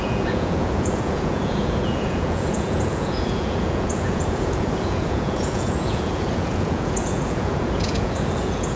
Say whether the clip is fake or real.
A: fake